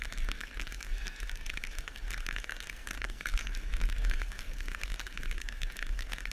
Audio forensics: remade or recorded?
remade